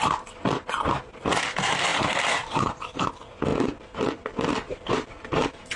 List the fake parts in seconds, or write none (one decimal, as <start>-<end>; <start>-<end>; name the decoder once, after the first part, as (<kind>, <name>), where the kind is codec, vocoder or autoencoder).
1.9-3.1 (vocoder, BigVGAN v2); 3.5-5.8